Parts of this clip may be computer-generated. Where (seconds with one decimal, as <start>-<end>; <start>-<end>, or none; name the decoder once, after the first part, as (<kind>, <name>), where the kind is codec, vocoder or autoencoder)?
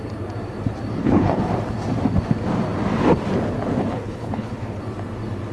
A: 1.0-1.5 (codec, HILCodec); 3.8-4.8